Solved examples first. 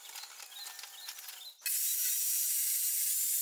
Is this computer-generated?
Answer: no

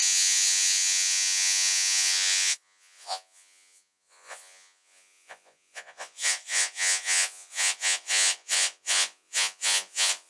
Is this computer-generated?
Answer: yes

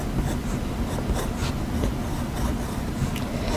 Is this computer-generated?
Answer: no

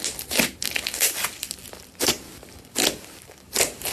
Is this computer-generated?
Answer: no